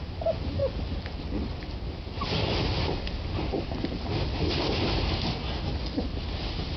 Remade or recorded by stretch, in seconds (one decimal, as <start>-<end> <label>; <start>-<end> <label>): 0.0-6.8 recorded